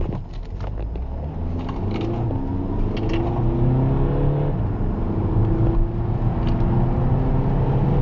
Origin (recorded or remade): recorded